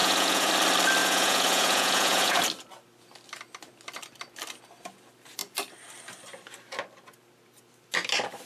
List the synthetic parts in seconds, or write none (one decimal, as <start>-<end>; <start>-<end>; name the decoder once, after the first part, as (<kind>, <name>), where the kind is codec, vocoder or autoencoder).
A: 0.0-0.5 (vocoder, Vocos); 1.0-2.4